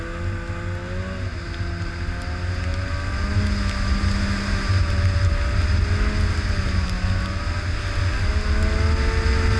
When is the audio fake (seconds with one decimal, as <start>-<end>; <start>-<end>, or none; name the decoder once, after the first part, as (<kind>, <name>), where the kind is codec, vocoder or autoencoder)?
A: none